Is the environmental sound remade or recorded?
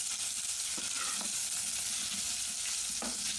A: recorded